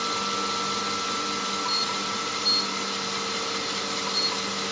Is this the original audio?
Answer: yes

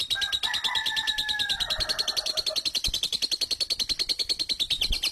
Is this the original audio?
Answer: yes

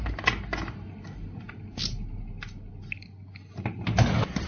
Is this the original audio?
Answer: yes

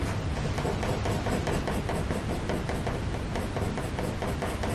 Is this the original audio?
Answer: yes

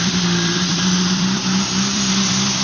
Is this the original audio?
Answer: no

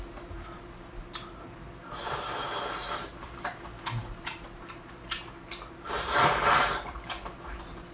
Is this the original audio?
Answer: no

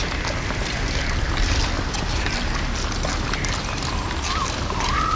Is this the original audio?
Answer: yes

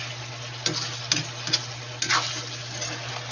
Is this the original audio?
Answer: yes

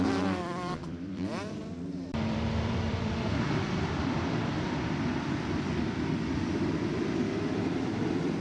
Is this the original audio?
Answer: no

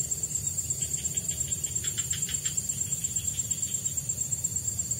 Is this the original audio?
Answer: yes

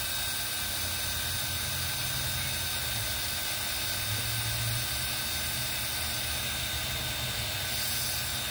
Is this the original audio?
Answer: yes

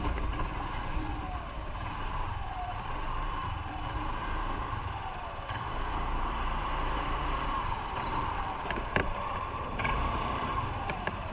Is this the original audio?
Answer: no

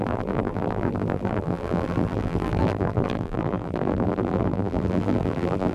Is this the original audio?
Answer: no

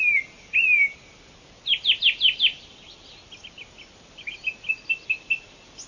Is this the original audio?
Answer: yes